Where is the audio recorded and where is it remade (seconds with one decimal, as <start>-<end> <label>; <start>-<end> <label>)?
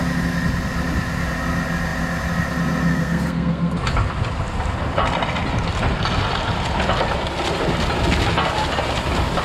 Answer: 0.0-2.9 recorded; 2.9-3.7 remade; 3.7-9.4 recorded